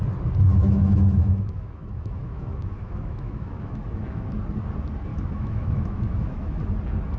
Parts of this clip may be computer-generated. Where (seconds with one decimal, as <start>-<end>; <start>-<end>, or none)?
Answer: 0.6-4.4; 5.1-6.6